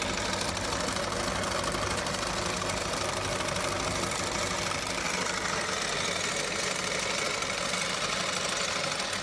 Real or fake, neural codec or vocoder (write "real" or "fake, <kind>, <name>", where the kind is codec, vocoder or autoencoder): real